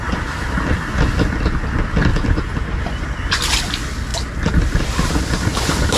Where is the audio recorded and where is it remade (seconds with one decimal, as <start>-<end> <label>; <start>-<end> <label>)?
0.0-2.1 recorded; 2.1-3.2 remade; 3.2-6.0 recorded